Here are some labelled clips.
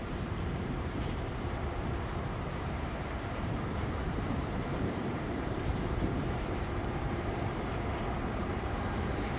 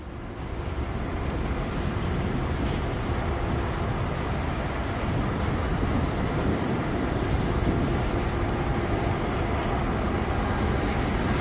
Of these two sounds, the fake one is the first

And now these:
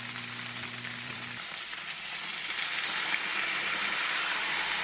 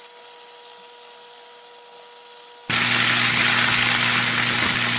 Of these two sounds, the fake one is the first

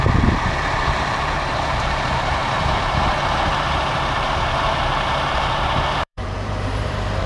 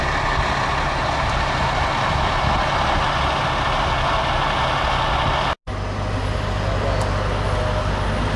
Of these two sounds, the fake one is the first